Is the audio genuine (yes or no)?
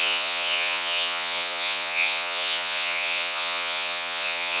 no